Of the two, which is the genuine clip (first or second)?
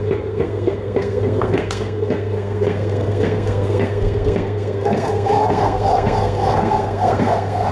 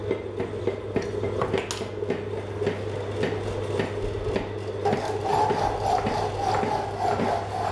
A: second